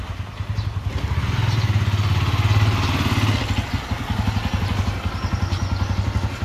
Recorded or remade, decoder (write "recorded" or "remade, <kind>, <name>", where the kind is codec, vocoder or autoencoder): recorded